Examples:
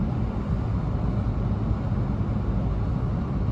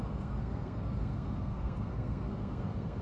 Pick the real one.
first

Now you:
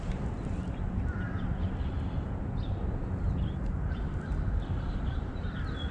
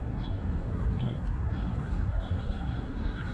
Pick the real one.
first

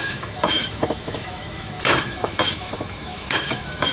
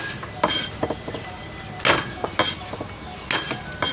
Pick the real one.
second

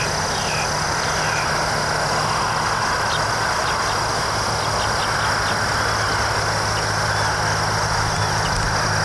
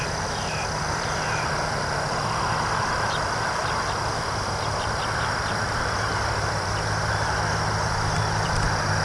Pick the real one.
first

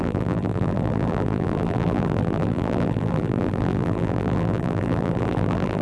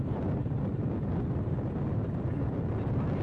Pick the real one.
second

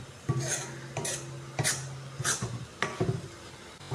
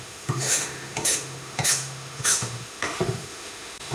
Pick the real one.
first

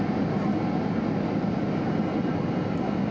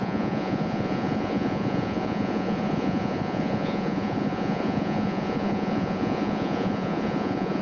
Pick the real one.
first